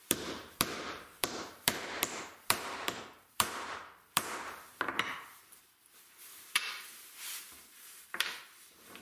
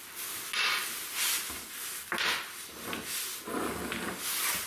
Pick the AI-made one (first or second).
first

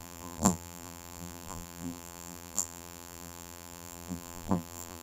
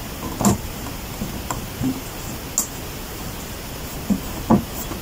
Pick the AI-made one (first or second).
first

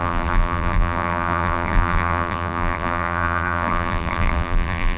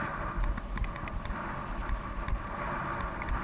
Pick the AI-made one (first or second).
first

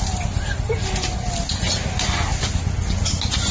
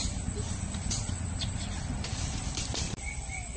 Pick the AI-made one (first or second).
second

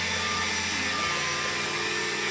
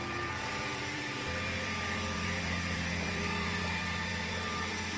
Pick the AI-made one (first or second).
second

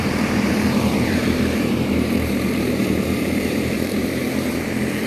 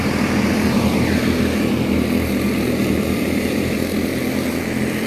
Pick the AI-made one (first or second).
first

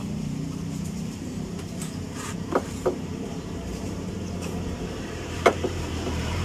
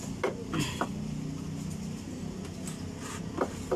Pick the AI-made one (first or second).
first